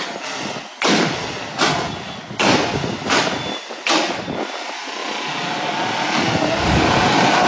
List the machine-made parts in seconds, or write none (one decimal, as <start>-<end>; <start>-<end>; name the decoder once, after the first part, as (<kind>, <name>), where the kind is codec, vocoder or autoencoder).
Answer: none